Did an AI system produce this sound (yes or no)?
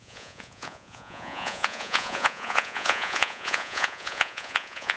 yes